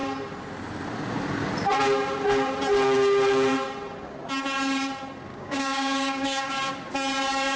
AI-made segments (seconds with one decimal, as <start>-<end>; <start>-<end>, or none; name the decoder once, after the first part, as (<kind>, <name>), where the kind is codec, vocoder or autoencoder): 5.3-6.7 (codec, DAC)